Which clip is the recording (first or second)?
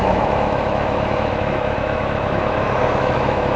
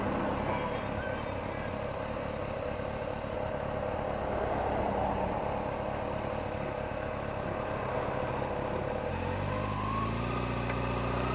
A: second